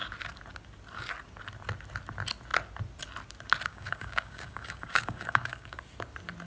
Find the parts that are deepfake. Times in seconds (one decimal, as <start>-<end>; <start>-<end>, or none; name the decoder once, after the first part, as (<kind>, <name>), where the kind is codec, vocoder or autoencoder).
3.7-5.8 (codec, DAC)